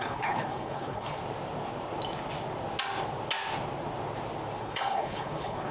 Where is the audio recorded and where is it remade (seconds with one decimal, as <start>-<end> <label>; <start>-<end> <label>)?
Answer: 0.0-1.2 remade; 1.2-4.6 recorded; 4.6-5.7 remade